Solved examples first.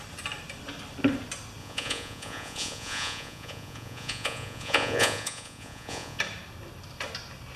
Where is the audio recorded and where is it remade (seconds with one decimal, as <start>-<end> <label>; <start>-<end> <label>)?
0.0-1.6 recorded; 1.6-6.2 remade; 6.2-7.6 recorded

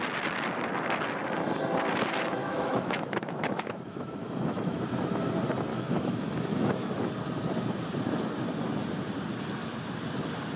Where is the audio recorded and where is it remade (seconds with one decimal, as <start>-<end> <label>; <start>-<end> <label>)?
0.0-2.4 recorded; 2.4-4.8 remade; 4.8-5.7 recorded; 5.7-7.1 remade; 7.1-10.6 recorded

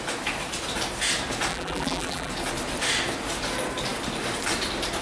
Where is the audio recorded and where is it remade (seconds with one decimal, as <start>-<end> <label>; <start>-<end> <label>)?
0.0-1.5 recorded; 1.5-2.3 remade; 2.3-5.0 recorded

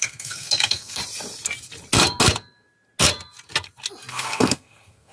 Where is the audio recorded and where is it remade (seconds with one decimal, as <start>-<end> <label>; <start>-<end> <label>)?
0.0-1.0 remade; 1.0-4.1 recorded; 4.1-5.1 remade

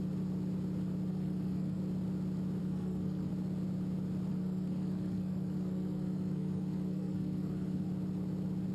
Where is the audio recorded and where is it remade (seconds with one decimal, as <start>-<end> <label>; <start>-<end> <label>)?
0.0-1.1 recorded; 1.1-1.8 remade; 1.8-2.6 recorded; 2.6-3.3 remade; 3.3-4.3 recorded; 4.3-7.9 remade; 7.9-8.7 recorded

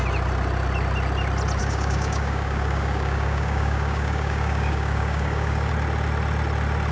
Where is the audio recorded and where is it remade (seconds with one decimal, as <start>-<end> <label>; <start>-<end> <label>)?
0.0-1.6 recorded; 1.6-5.7 remade; 5.7-6.9 recorded

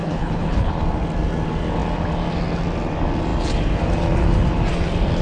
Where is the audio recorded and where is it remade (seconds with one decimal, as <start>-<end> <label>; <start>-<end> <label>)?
0.0-0.7 remade; 0.7-5.2 recorded